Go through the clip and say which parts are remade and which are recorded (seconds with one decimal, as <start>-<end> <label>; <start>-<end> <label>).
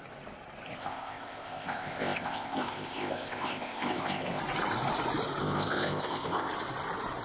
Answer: 0.0-0.8 recorded; 0.8-4.4 remade; 4.4-5.4 recorded; 5.4-6.5 remade; 6.5-7.2 recorded